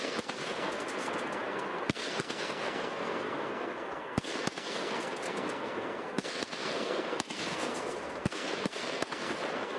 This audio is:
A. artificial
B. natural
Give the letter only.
A